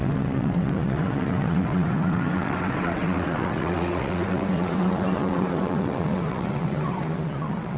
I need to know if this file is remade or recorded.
remade